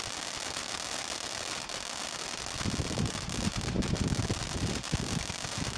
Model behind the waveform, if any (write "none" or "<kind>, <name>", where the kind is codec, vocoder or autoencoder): none